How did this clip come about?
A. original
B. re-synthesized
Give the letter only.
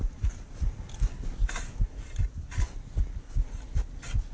A